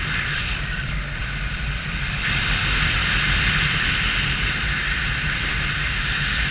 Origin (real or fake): real